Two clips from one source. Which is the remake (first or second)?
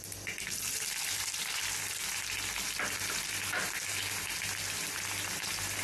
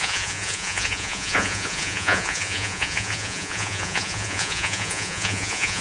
second